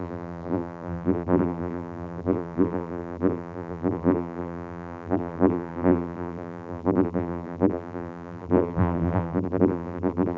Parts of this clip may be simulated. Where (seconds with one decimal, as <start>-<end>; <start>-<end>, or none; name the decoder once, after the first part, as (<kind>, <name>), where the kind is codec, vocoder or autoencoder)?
0.0-10.4 (vocoder, BigVGAN v2)